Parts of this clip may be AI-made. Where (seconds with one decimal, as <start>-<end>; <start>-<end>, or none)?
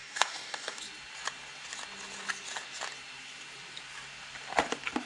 0.0-0.8